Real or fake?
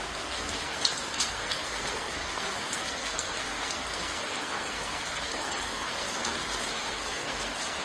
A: fake